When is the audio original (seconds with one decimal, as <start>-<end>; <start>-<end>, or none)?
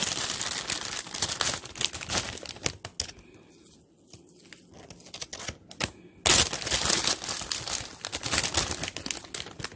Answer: 0.0-9.8